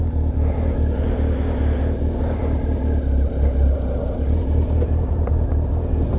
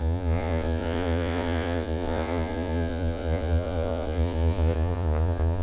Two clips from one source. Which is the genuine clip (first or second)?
first